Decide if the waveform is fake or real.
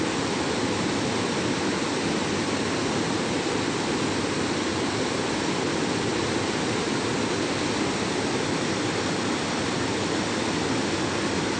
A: real